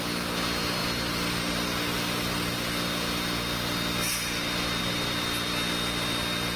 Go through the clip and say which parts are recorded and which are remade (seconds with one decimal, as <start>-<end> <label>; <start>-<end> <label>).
0.0-6.6 recorded